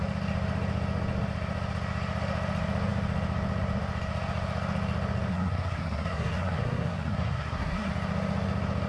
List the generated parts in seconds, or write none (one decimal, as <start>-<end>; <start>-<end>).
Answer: 5.3-7.9